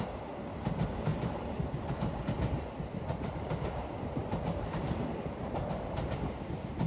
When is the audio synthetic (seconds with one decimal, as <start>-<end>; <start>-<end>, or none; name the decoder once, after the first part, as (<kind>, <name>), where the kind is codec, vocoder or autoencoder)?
none